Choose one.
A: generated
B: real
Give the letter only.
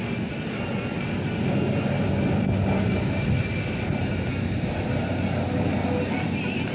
B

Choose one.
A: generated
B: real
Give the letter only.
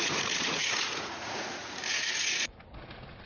A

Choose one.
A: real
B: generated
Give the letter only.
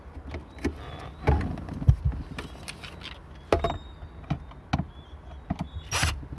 A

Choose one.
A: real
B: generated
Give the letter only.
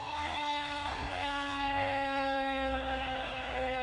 B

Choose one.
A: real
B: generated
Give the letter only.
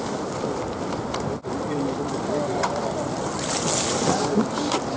A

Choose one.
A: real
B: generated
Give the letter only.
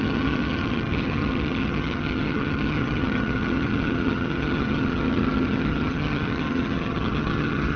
B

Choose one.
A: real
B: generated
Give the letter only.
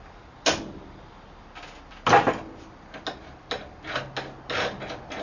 A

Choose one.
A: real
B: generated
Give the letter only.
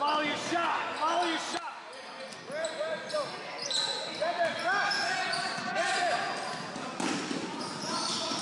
A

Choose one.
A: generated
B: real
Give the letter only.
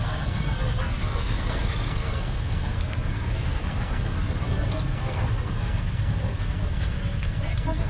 A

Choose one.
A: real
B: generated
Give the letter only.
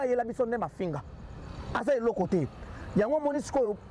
B